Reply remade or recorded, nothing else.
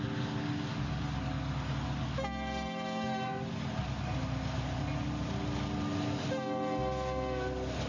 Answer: recorded